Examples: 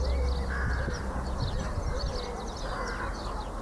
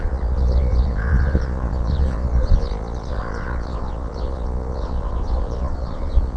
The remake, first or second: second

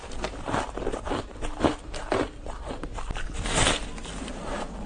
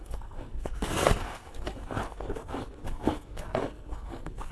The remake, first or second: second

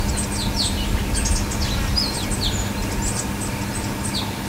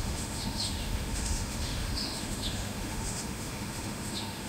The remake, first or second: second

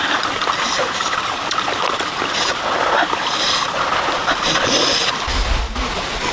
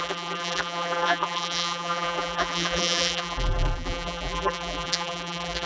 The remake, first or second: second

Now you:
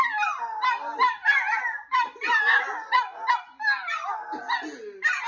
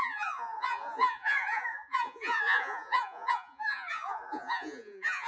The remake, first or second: second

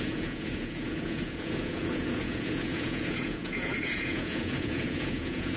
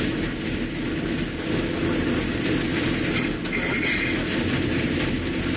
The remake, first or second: first